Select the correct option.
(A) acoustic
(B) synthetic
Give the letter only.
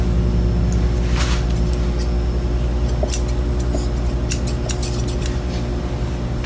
A